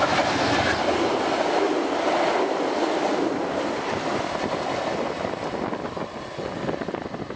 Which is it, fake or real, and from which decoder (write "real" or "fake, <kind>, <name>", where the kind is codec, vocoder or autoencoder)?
real